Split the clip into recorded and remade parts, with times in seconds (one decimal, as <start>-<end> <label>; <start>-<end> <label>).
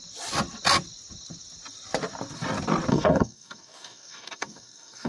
0.0-2.9 recorded; 2.9-5.1 remade